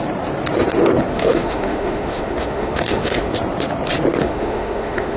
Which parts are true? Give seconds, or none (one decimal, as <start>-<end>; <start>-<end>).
0.0-1.1; 3.3-4.2